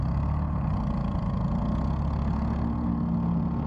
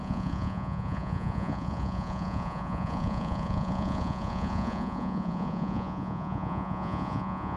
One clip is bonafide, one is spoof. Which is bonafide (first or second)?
first